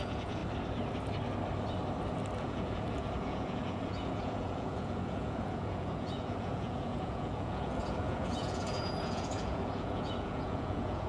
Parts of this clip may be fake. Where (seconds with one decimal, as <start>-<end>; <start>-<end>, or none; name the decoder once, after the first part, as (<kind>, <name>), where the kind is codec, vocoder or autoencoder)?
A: 0.0-0.4 (vocoder, Vocos); 2.4-11.1